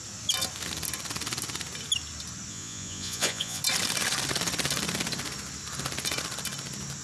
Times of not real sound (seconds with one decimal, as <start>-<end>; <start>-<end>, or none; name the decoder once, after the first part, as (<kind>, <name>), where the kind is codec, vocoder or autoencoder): 2.5-3.6 (vocoder, Vocos)